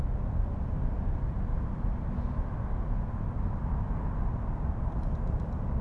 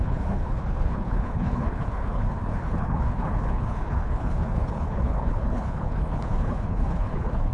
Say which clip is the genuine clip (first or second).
first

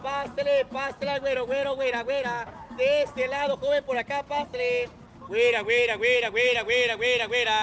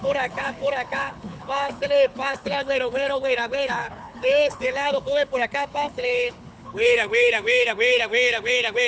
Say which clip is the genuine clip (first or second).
first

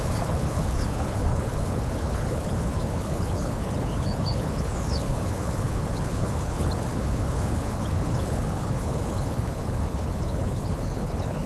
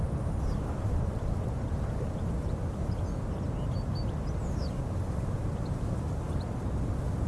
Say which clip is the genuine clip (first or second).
second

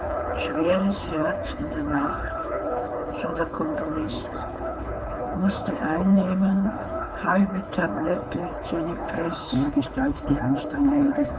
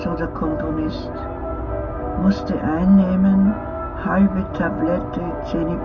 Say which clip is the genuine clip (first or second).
second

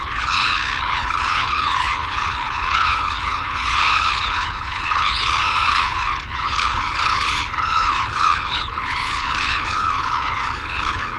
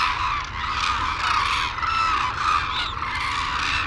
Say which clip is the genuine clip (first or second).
second